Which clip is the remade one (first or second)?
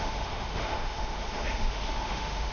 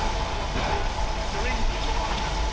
first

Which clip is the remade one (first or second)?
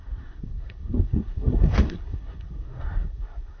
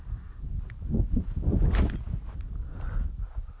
first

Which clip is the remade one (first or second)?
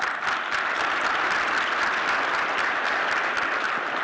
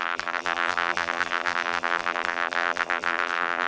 second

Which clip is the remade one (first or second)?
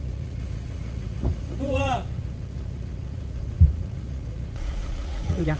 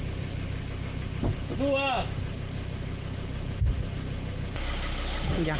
first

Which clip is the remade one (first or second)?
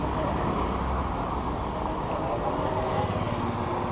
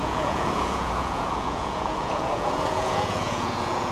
second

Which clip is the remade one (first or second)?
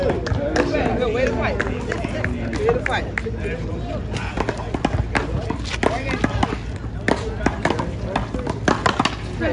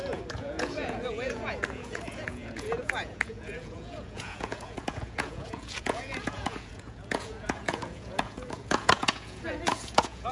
second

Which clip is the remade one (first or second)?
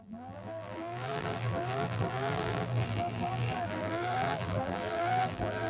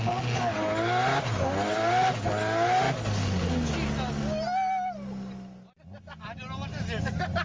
first